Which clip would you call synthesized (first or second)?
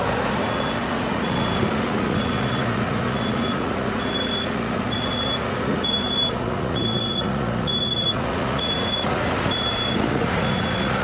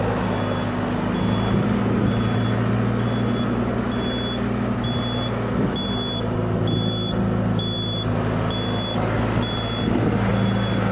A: first